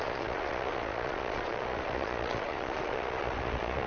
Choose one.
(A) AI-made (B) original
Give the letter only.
A